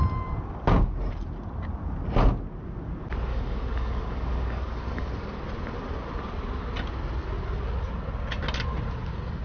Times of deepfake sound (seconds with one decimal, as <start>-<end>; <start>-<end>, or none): 3.3-5.1